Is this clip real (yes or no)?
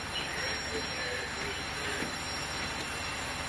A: yes